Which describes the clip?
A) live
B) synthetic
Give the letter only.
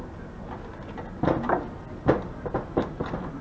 A